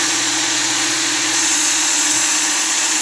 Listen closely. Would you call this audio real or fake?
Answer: fake